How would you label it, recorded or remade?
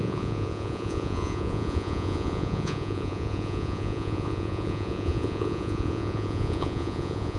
remade